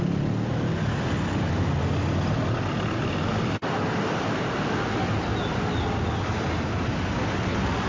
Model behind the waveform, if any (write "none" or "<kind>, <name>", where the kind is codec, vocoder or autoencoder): none